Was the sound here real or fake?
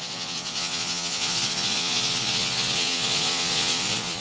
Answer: fake